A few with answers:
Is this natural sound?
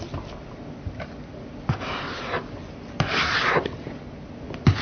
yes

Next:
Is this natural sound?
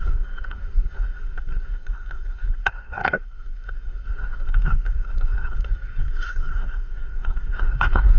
no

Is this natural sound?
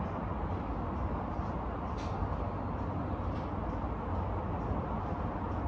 yes